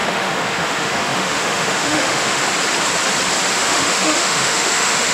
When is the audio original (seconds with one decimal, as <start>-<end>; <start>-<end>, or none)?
2.4-3.5